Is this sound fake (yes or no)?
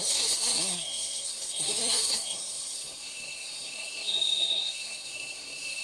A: yes